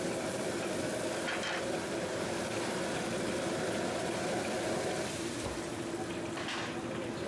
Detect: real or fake real